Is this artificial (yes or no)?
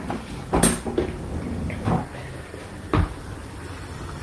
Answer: no